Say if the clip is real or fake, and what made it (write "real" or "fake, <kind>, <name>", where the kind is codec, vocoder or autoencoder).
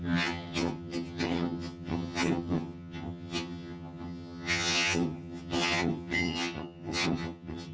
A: fake, vocoder, HiFi-GAN